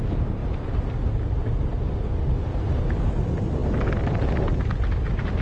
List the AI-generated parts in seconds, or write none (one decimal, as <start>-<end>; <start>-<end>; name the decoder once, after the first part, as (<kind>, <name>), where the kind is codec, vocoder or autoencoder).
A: none